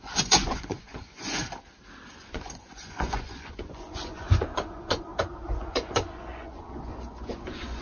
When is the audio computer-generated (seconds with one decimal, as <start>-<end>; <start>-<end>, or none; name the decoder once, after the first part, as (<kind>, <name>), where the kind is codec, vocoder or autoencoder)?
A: 0.0-1.4 (vocoder, Vocos); 2.1-5.1; 5.6-7.8